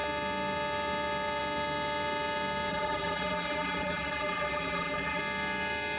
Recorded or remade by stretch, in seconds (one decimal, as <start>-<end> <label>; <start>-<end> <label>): 0.0-2.7 recorded; 2.7-5.2 remade; 5.2-6.0 recorded